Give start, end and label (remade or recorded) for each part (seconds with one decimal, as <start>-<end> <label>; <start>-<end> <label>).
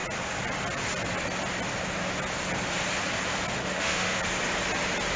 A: 0.0-3.6 recorded; 3.6-4.2 remade; 4.2-5.2 recorded